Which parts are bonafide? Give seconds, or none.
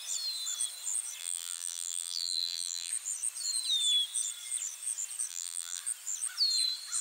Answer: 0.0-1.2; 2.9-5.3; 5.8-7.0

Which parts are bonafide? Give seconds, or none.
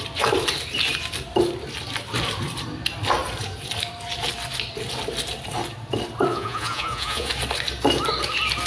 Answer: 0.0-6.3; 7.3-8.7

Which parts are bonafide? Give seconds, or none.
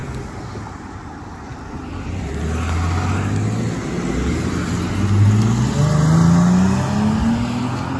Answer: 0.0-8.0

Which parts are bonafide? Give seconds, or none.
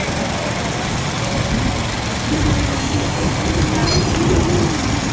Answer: 0.0-2.8; 3.3-5.1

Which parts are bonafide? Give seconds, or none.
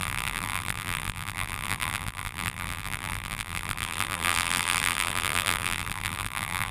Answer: none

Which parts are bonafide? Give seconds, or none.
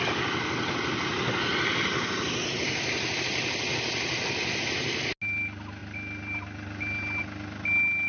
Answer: 0.0-8.1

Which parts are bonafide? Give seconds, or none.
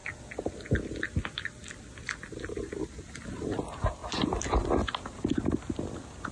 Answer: 0.0-6.3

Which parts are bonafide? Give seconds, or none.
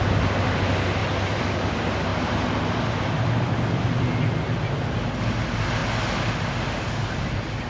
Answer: 0.0-1.0; 1.5-2.1; 4.0-7.7